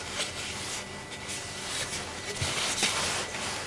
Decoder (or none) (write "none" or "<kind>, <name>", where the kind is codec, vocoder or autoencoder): none